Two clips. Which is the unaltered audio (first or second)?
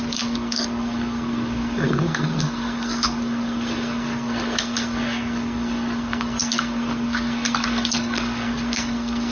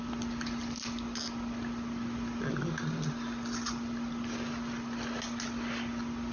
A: second